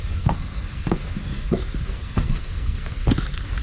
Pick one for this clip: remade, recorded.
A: remade